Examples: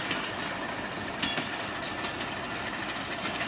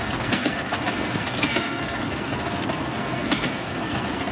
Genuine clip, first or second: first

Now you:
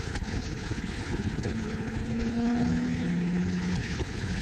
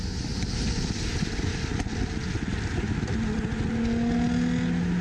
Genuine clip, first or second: second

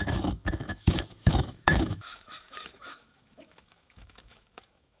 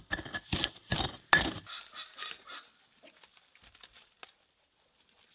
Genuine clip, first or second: second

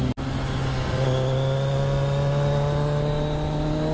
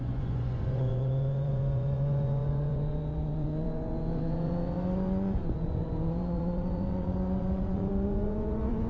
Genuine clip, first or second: first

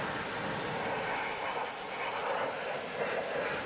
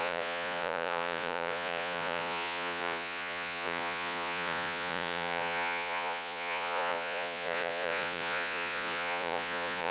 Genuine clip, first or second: first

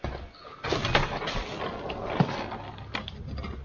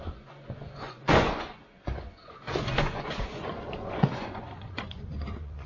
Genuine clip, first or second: first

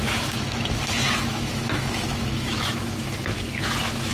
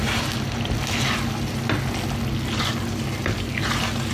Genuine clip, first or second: second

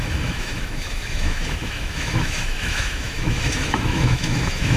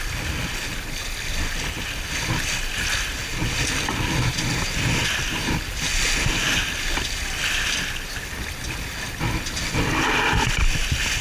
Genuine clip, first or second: second